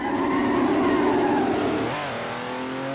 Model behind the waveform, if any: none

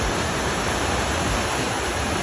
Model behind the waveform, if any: vocoder, BigVGAN v2